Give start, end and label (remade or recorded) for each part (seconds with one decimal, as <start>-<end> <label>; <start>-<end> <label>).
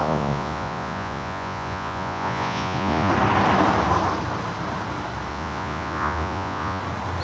0.0-3.1 remade; 3.1-5.3 recorded; 5.3-6.8 remade; 6.8-7.2 recorded